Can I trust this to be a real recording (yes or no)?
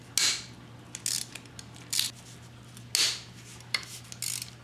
yes